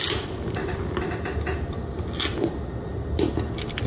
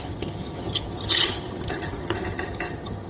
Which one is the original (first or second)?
first